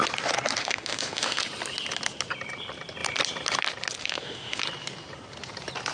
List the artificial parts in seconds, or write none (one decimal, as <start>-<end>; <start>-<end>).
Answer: 0.6-1.4; 4.0-4.6